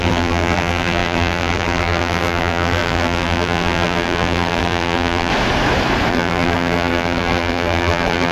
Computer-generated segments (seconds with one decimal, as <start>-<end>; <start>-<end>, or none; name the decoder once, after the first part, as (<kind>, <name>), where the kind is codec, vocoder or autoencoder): 0.0-5.3 (vocoder, BigVGAN v2); 6.1-8.3